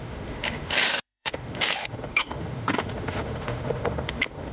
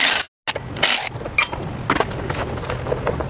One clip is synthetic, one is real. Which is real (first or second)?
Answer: second